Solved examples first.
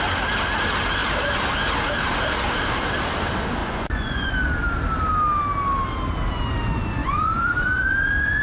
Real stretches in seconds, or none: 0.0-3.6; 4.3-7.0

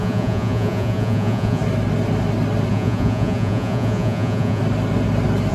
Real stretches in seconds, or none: 1.6-2.7; 4.6-5.5

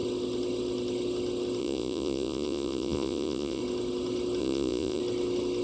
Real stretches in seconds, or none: 0.0-1.6; 3.6-4.4; 5.0-5.6

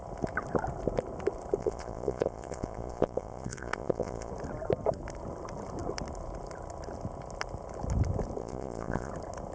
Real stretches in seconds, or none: 0.0-1.6; 4.3-8.4; 9.1-9.5

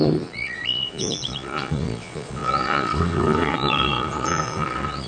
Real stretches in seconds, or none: none

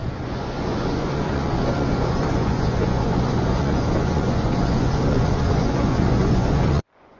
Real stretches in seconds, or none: none